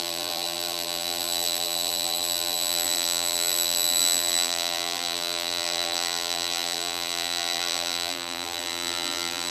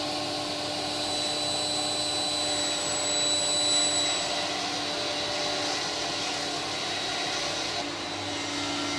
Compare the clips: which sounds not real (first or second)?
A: first